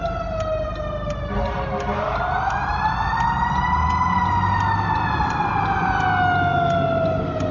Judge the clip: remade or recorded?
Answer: recorded